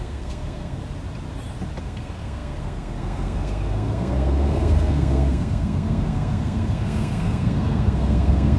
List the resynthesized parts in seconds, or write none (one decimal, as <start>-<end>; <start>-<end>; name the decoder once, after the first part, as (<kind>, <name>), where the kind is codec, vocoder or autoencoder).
0.0-0.8 (codec, SNAC); 1.8-8.6